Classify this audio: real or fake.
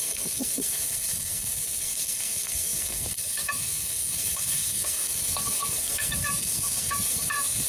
fake